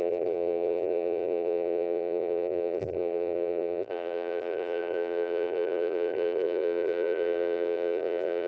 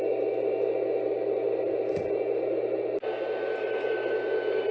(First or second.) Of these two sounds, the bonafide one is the second